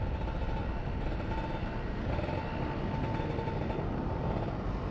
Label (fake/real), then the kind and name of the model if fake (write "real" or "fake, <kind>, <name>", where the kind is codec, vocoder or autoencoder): real